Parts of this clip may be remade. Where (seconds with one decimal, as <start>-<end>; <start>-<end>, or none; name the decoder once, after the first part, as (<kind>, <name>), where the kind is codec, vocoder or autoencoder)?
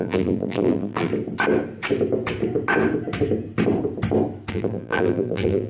0.0-1.1 (vocoder, BigVGAN v2); 4.5-5.7